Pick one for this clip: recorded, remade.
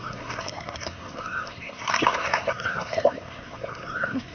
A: remade